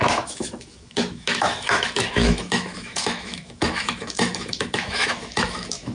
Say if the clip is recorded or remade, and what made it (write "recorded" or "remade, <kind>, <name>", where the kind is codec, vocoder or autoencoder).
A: remade, autoencoder, DAC-VAE